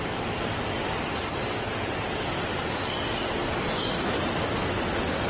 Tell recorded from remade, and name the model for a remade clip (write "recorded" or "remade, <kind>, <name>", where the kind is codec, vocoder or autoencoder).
recorded